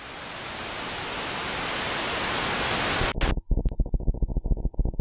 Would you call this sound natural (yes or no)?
yes